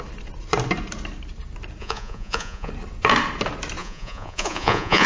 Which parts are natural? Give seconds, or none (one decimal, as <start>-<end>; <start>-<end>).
0.0-1.8; 2.7-3.8